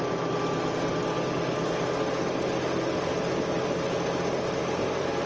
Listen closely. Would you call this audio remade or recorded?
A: recorded